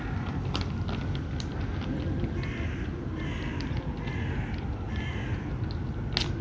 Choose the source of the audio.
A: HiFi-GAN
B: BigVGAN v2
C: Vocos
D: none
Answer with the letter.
D